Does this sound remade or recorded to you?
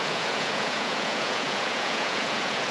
remade